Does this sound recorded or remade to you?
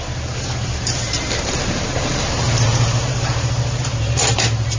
remade